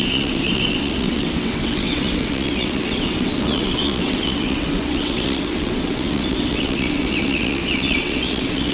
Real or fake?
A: fake